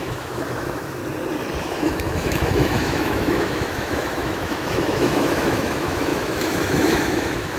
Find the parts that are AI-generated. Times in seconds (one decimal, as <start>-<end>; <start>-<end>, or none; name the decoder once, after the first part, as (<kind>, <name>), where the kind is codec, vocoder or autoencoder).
0.0-1.0 (autoencoder, DAC-VAE); 1.6-7.6